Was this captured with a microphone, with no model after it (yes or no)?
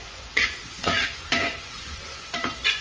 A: no